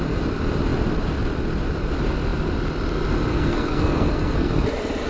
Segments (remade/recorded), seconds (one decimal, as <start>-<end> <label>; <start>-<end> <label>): 0.0-3.3 recorded; 3.3-4.5 remade; 4.5-5.1 recorded